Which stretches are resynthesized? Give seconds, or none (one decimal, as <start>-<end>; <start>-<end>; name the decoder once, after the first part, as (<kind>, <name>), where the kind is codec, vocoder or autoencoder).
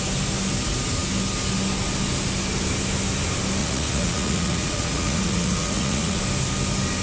3.6-6.2 (vocoder, Vocos)